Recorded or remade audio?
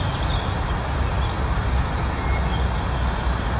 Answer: recorded